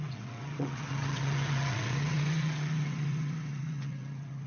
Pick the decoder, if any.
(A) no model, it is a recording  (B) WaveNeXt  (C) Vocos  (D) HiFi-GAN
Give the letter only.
B